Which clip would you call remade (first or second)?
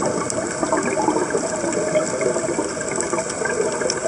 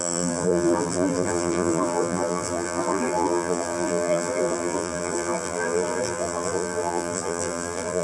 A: second